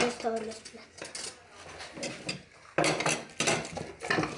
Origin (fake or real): real